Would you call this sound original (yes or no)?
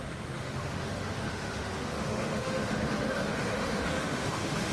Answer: no